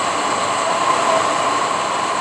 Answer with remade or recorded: recorded